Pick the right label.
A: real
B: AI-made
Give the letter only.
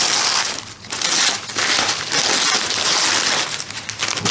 A